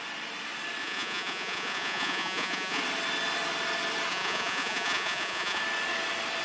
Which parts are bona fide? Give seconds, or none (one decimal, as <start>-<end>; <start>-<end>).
0.0-0.8; 2.8-4.1; 5.6-6.4